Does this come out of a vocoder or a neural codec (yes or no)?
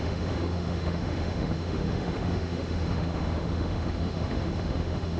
yes